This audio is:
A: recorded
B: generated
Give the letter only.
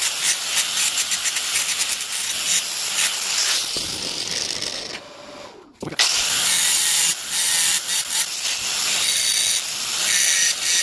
A